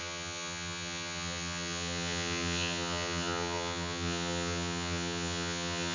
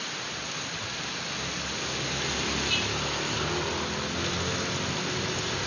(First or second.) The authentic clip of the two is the second